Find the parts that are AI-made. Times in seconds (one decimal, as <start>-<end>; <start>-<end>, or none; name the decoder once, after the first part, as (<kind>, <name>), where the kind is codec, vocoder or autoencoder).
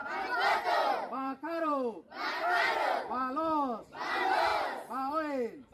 0.0-3.0 (vocoder, BigVGAN v2); 4.5-5.1